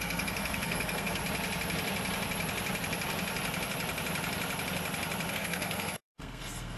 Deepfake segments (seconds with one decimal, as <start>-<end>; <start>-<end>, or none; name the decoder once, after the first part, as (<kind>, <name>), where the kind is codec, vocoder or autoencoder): 0.0-1.2 (codec, SNAC); 5.3-6.8